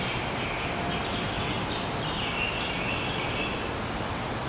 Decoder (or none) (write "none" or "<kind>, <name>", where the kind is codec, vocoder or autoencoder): none